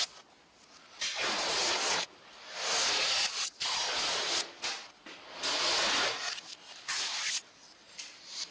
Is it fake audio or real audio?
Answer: real